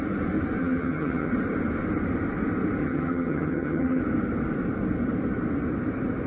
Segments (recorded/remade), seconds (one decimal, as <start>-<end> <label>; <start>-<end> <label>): 0.0-0.6 recorded; 0.6-1.3 remade; 1.3-2.8 recorded; 2.8-4.0 remade; 4.0-6.3 recorded